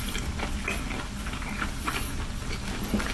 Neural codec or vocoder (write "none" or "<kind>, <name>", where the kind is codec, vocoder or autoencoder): none